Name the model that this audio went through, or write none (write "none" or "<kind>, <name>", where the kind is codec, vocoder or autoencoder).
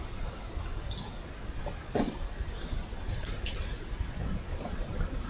none